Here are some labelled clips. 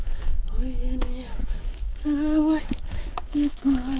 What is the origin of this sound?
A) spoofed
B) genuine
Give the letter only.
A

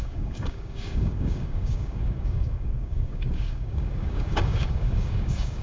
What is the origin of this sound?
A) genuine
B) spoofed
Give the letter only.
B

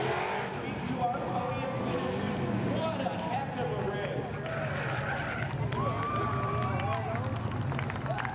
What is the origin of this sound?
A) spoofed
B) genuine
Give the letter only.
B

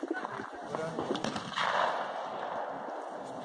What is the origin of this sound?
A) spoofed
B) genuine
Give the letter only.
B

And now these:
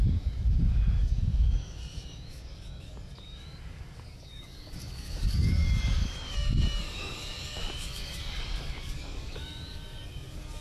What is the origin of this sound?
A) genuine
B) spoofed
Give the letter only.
B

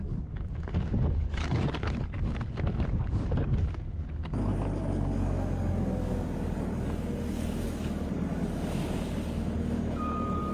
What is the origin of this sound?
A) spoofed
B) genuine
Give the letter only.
A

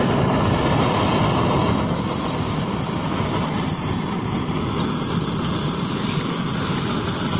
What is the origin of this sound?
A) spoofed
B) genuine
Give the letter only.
B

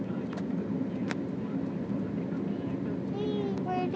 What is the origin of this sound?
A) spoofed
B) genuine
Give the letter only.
B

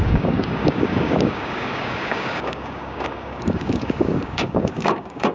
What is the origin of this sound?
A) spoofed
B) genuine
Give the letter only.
A